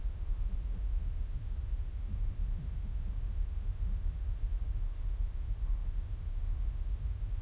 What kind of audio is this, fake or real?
fake